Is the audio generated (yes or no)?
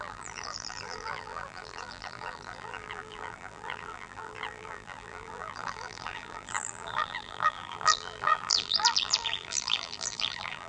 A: yes